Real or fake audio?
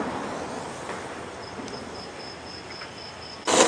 real